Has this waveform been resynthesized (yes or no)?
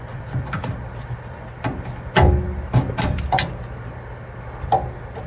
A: no